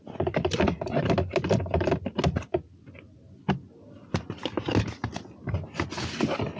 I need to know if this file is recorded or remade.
recorded